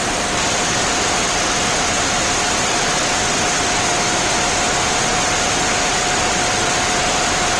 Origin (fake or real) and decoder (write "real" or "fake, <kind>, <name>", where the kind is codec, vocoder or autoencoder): real